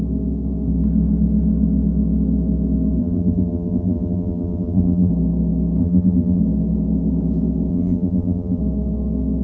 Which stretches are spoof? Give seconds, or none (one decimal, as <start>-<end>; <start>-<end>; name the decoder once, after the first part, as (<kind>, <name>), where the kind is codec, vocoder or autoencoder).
3.0-5.1 (vocoder, BigVGAN v2); 5.8-6.4; 7.7-8.6